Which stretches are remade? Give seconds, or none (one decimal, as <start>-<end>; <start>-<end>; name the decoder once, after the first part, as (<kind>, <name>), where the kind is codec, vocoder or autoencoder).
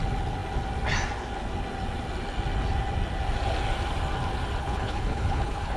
4.6-5.8 (codec, HILCodec)